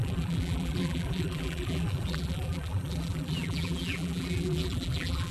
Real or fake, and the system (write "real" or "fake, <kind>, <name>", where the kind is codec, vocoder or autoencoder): fake, vocoder, BigVGAN v2